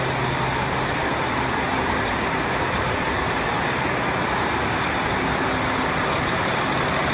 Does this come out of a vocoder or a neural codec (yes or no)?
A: no